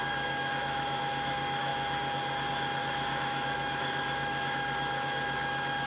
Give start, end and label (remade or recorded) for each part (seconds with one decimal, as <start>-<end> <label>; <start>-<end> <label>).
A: 0.0-1.7 remade; 1.7-2.5 recorded; 2.5-5.9 remade